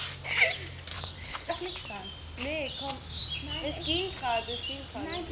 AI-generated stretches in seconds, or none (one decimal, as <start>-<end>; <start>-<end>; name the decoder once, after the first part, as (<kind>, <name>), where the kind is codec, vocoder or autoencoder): 0.9-1.5 (codec, HILCodec)